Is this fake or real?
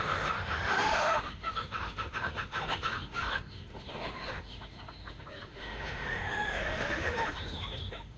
fake